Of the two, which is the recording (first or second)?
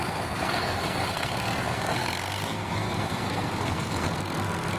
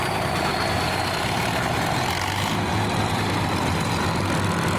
second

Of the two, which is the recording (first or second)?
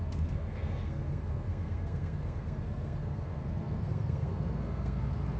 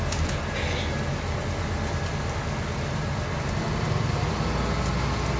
second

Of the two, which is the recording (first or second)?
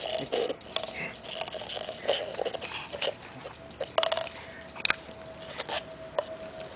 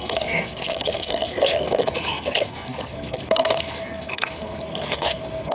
first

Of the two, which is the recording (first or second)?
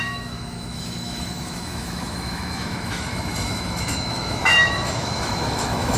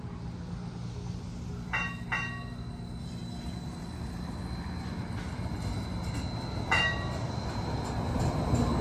second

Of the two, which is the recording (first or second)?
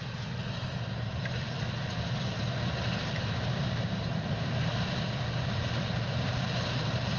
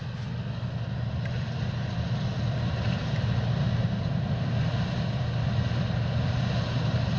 second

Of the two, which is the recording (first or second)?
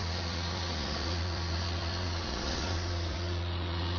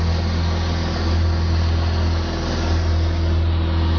second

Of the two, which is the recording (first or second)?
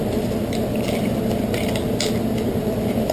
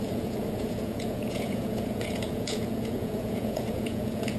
first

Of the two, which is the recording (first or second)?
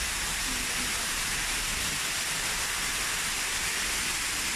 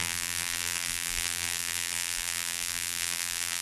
first